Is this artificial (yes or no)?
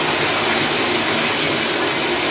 no